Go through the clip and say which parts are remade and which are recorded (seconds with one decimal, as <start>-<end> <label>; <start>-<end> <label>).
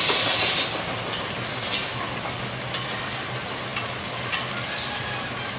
0.0-5.6 recorded